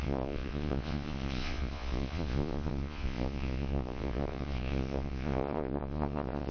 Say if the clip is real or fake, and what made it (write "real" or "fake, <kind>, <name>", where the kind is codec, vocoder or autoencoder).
fake, vocoder, Vocos